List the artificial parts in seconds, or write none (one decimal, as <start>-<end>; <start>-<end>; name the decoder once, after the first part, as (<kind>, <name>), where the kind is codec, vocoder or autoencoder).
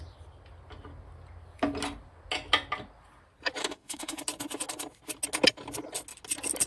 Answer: 3.6-4.2 (autoencoder, DAC-VAE)